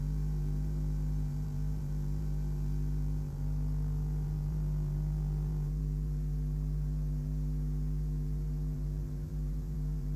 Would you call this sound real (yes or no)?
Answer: no